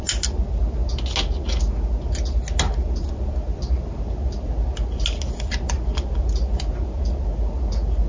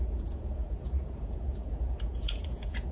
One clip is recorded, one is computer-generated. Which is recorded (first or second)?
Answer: first